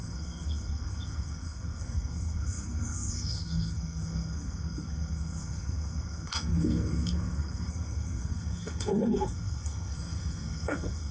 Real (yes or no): no